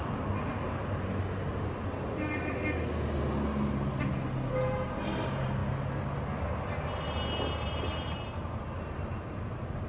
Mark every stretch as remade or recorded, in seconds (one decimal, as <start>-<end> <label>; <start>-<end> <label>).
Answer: 0.0-9.9 recorded